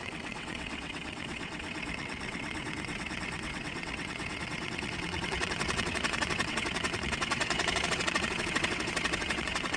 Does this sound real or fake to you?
fake